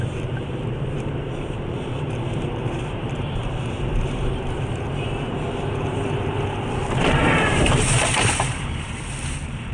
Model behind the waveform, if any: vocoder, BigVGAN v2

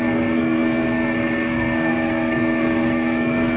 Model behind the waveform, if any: codec, SNAC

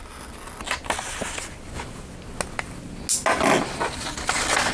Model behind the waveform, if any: none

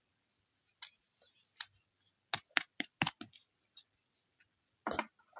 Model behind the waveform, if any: none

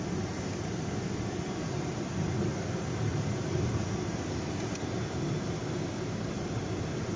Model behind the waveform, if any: none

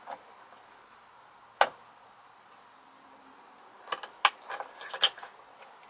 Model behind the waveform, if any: none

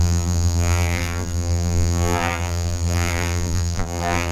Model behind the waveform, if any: vocoder, BigVGAN v2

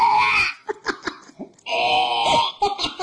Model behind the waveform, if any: none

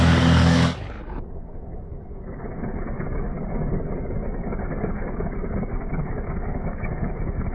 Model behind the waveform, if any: codec, DAC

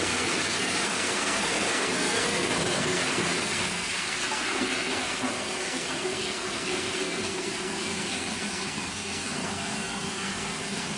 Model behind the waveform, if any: codec, SNAC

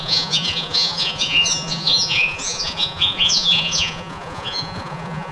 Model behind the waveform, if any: vocoder, Vocos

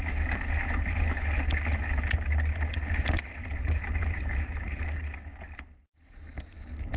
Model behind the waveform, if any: none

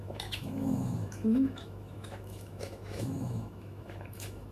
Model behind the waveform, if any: autoencoder, DAC-VAE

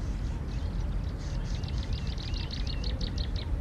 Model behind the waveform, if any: none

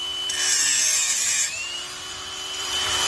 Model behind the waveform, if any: vocoder, BigVGAN v2